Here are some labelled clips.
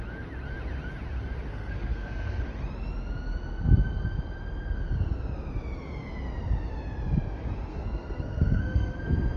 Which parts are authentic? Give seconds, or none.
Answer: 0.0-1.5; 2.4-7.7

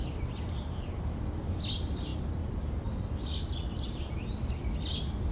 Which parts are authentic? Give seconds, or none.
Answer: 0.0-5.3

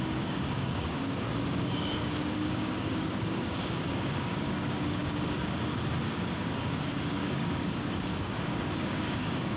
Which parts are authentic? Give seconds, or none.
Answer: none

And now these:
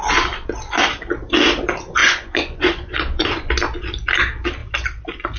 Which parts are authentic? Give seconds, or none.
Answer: 0.0-2.0; 3.5-5.4

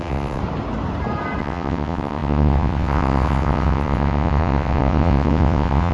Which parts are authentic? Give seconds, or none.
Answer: 0.4-1.4

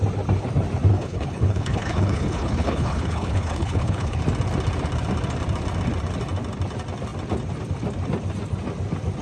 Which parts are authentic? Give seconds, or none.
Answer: 0.0-0.9; 4.2-9.2